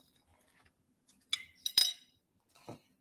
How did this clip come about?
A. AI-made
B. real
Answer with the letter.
B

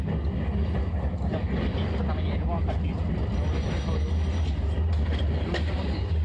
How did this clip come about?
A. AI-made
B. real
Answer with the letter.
B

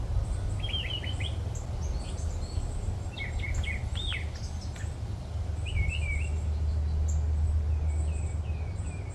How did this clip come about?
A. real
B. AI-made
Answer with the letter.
A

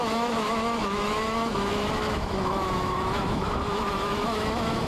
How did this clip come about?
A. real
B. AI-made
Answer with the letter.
B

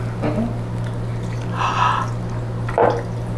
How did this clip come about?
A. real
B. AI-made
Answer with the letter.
A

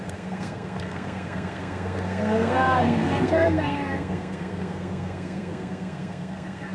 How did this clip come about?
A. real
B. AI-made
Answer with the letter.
B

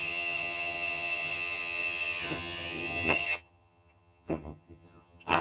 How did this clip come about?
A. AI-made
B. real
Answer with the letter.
A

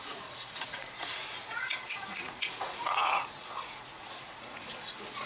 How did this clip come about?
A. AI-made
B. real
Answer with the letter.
A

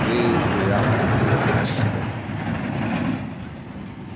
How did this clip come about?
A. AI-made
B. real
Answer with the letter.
B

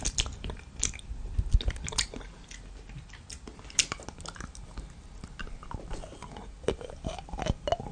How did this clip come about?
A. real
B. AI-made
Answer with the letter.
A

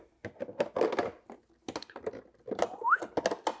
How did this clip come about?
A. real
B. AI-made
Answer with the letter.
A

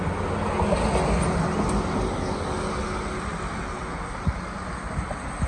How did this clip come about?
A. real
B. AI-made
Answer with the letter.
A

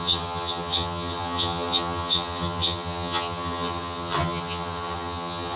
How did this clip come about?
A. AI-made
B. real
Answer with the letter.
A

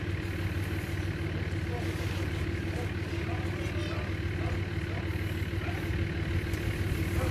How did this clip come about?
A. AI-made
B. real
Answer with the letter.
B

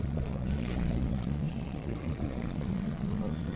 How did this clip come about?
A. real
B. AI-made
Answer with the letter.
B